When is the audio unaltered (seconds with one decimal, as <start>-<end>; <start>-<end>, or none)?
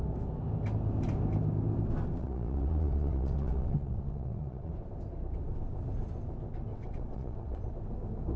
0.0-2.2; 4.7-6.7; 7.7-8.4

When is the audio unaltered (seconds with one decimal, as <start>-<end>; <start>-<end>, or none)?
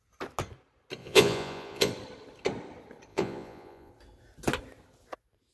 0.0-1.0; 1.9-3.1; 3.9-5.5